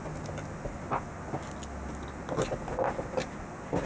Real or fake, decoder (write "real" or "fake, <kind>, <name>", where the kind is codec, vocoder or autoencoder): real